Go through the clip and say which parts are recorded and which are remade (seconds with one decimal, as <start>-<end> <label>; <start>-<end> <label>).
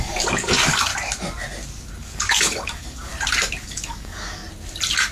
0.0-0.9 remade; 0.9-2.0 recorded; 2.0-3.1 remade; 3.1-3.6 recorded; 3.6-4.4 remade; 4.4-5.1 recorded